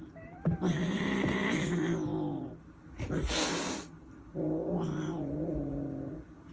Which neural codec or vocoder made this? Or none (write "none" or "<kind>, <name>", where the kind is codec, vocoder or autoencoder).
none